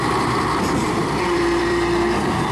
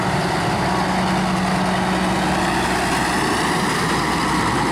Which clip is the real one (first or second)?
second